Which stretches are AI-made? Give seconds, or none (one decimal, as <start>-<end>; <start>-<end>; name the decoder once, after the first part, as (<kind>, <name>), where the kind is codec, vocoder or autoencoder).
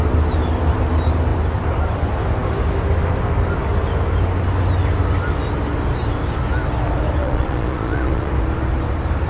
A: 7.2-8.3 (vocoder, Vocos)